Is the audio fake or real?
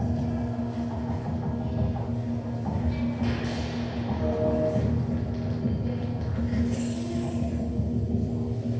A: real